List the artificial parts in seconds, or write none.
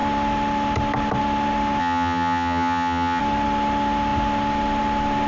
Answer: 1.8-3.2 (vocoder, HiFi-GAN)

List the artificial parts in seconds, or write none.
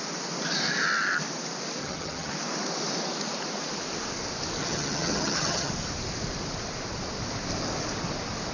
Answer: 1.8-2.3 (vocoder, HiFi-GAN); 4.6-5.7